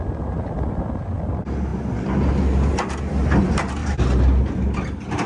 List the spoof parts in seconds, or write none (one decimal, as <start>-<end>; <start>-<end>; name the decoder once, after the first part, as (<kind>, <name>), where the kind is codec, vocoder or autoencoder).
none